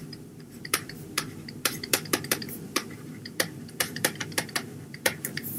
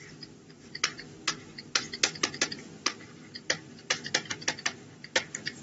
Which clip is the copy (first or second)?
first